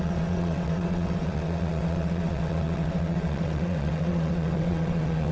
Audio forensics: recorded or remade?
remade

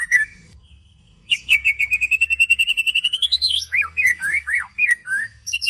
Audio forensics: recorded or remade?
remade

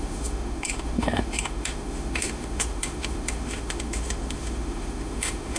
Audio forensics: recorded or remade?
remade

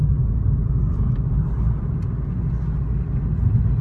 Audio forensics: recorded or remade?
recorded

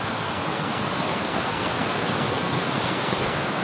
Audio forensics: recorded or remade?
remade